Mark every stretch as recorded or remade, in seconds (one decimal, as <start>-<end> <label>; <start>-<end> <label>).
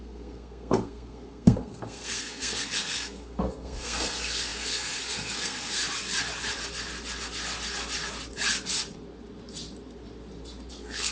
0.0-5.8 remade; 5.8-10.7 recorded; 10.7-11.1 remade